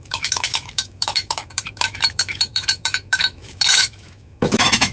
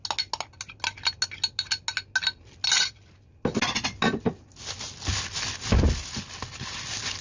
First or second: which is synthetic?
first